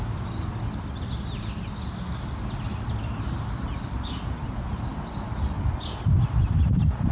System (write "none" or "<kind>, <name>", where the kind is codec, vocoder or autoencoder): none